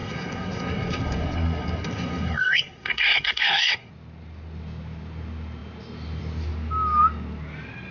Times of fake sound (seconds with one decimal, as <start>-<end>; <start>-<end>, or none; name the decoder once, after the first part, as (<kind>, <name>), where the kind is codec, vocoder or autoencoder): 0.0-3.9 (codec, SNAC)